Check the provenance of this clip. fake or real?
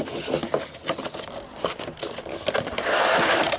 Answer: fake